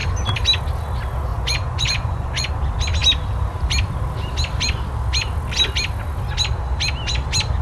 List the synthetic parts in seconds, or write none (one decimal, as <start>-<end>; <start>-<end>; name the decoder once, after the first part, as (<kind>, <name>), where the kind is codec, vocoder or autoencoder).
1.3-2.5 (vocoder, Vocos)